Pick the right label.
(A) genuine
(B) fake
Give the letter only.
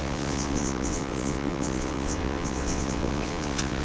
B